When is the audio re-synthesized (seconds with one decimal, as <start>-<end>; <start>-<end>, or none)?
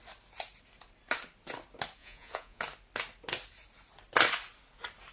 2.0-2.6